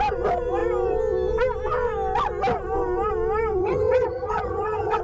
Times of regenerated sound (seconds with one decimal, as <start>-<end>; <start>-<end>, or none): 3.6-5.0